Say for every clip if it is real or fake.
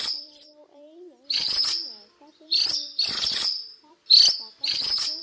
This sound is fake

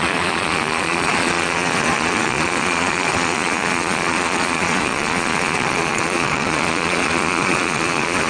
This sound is fake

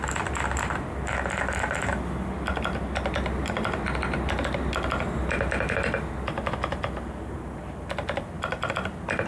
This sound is fake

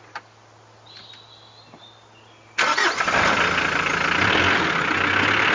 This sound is real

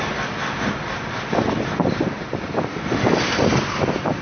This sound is real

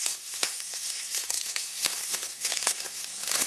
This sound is fake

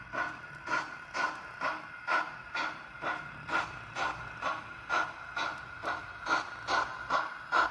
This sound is real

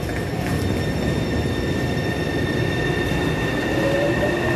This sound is real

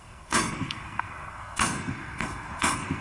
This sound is fake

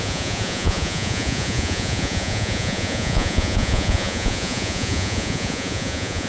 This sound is fake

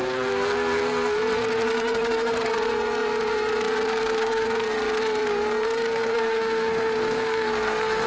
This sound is fake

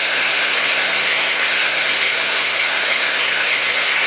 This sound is fake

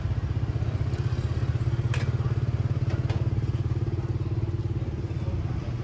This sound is real